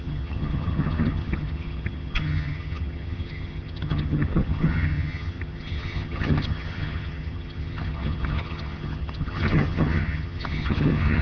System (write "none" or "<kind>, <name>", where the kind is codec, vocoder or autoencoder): vocoder, HiFi-GAN